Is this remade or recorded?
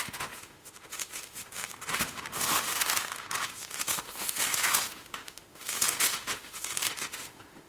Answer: remade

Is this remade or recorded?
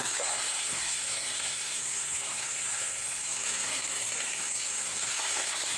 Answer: remade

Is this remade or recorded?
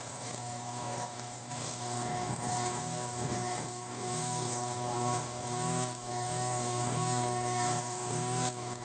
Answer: remade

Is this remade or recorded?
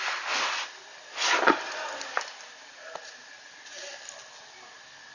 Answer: recorded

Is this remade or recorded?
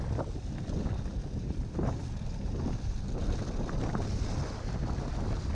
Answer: recorded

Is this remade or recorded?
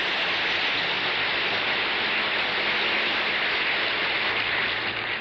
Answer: recorded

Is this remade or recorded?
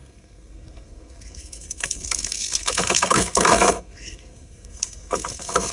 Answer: remade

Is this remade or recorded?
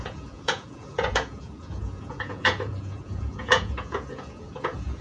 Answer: remade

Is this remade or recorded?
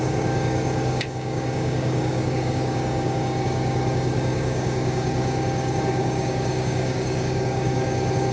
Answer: remade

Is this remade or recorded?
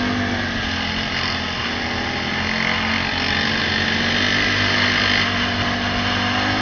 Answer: recorded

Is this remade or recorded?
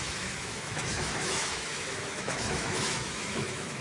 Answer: remade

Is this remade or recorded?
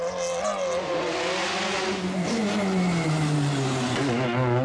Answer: recorded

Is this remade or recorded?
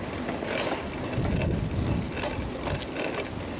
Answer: recorded